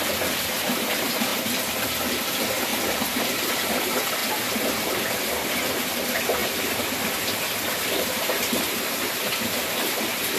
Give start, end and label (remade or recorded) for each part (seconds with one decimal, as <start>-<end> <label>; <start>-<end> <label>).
0.0-1.3 remade; 1.3-2.1 recorded; 2.1-10.4 remade

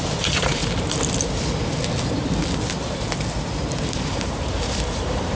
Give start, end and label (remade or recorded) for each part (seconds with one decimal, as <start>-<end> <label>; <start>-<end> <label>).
0.0-0.6 remade; 0.6-3.8 recorded; 3.8-5.3 remade

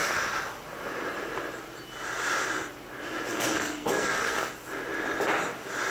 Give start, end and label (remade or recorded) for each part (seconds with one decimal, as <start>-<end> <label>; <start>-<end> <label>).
0.0-3.3 recorded; 3.3-4.5 remade; 4.5-5.9 recorded

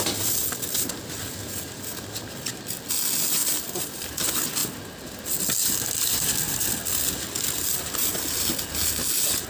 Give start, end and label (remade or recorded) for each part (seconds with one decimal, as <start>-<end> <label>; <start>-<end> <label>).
0.0-3.4 recorded; 3.4-4.1 remade; 4.1-9.5 recorded